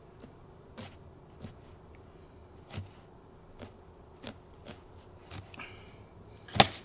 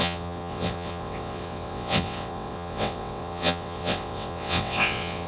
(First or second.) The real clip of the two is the first